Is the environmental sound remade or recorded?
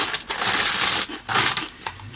recorded